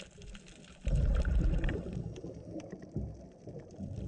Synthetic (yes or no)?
no